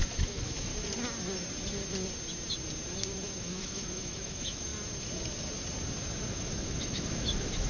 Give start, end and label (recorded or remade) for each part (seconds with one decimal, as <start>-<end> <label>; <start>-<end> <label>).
0.0-0.7 remade; 0.7-3.4 recorded; 3.4-4.7 remade; 4.7-6.3 recorded; 6.3-7.7 remade